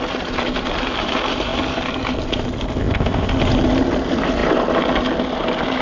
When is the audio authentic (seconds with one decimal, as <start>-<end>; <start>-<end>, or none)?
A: 0.0-2.8; 3.3-5.8